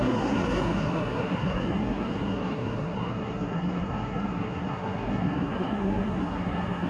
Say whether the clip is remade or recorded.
remade